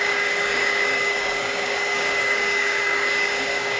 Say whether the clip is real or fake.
fake